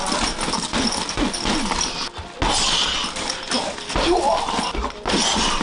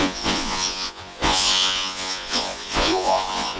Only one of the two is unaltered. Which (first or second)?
first